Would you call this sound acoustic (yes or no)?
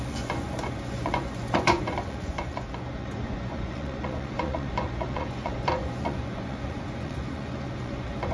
no